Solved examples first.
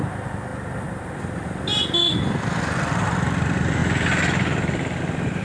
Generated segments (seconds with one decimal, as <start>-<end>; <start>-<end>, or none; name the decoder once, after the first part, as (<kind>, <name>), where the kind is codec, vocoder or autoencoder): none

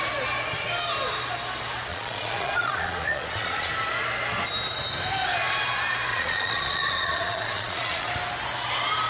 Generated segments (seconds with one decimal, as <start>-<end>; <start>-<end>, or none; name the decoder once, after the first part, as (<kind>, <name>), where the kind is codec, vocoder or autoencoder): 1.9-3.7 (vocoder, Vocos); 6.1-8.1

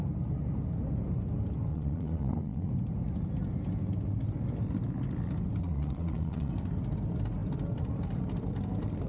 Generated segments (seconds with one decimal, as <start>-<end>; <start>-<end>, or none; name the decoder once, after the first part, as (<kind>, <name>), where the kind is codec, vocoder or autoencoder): 1.7-2.7 (vocoder, Vocos); 5.6-6.5

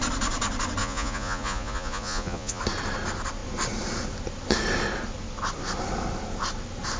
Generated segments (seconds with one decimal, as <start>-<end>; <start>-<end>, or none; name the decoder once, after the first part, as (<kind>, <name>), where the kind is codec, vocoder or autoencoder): 0.8-2.6 (vocoder, Vocos)

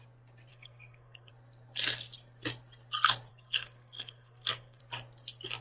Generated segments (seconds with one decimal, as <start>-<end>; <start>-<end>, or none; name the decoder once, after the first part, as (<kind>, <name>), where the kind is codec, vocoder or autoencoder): 0.5-1.3 (codec, SNAC); 3.3-4.8

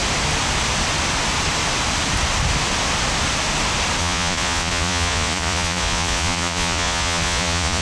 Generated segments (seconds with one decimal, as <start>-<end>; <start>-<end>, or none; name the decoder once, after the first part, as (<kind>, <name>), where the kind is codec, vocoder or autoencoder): 4.0-7.8 (vocoder, Vocos)